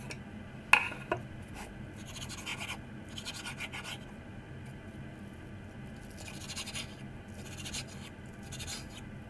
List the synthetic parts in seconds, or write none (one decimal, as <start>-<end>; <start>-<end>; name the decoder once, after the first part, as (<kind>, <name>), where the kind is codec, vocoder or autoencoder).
none